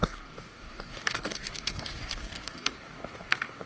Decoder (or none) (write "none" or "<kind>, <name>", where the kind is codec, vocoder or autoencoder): codec, DAC